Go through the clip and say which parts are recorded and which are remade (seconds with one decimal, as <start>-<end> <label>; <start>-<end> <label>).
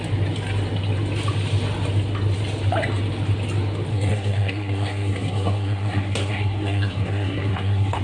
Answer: 0.0-3.9 recorded; 3.9-8.0 remade